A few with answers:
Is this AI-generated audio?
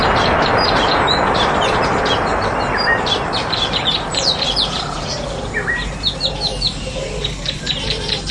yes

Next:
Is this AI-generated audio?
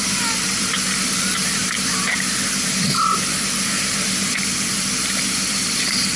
yes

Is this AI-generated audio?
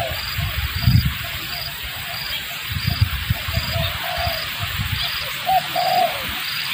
yes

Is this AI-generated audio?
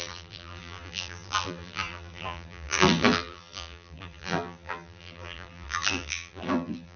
yes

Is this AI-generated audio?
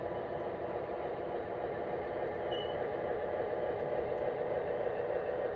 yes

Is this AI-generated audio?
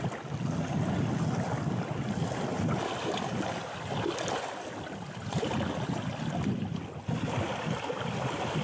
no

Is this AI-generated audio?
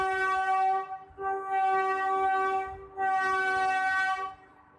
no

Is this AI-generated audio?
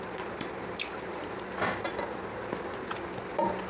yes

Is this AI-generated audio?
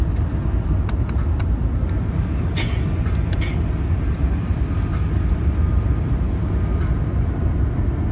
no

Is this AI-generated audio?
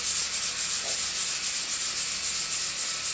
no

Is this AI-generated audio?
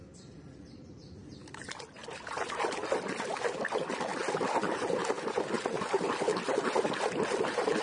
yes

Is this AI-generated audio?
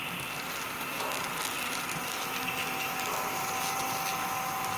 no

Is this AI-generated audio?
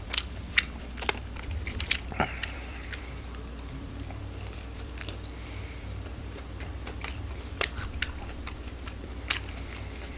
yes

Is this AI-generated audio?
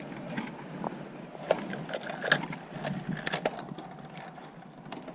no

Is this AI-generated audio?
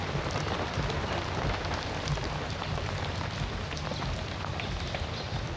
yes